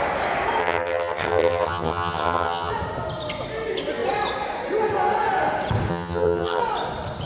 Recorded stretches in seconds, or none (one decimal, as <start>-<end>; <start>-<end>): 0.0-0.6; 2.7-5.9; 6.6-7.3